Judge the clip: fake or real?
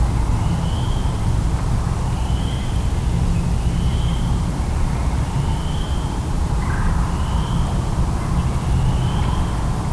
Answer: real